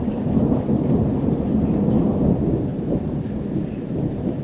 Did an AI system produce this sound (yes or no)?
yes